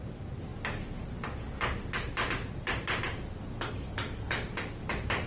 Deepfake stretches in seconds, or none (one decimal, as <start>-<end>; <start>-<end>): 0.0-0.5; 3.7-5.3